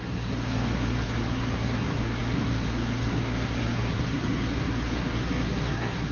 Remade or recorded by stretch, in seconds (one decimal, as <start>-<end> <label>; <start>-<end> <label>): 0.0-6.1 remade

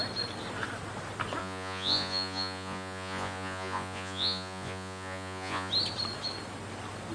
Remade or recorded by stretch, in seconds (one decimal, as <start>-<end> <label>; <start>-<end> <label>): 0.0-1.4 recorded; 1.4-5.7 remade; 5.7-7.1 recorded

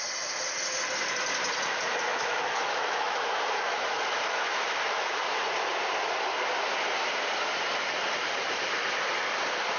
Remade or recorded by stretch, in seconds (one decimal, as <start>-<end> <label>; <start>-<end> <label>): 0.0-2.1 recorded; 2.1-5.4 remade; 5.4-9.8 recorded

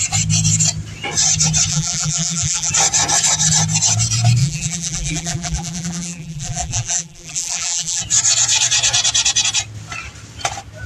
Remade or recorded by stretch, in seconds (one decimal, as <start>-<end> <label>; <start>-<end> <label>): 0.0-1.7 recorded; 1.7-2.7 remade; 2.7-4.4 recorded; 4.4-8.0 remade; 8.0-10.9 recorded

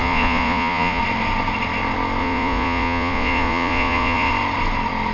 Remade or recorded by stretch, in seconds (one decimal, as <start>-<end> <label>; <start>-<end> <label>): 0.0-1.0 remade; 1.0-2.2 recorded; 2.2-4.3 remade; 4.3-5.1 recorded

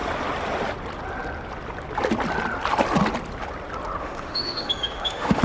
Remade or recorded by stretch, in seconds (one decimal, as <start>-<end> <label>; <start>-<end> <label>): 0.0-4.0 recorded; 4.0-5.4 remade